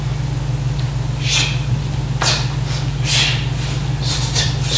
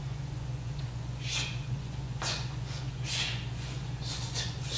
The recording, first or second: first